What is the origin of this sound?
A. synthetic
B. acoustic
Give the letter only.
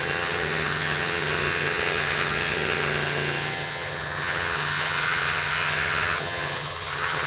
A